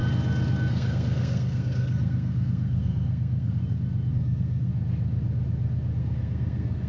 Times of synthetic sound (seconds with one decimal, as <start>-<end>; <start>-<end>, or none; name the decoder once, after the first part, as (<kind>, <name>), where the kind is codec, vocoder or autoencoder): 0.7-3.6 (codec, SNAC); 4.1-4.7; 6.0-6.9